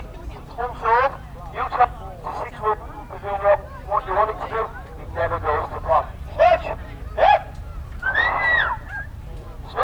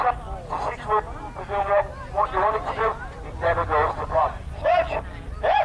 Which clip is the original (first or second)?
second